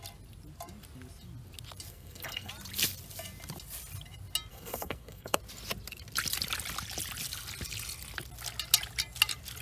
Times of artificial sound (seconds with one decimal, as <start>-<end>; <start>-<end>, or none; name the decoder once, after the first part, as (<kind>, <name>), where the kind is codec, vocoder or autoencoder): 1.9-2.5 (codec, SNAC); 4.5-5.4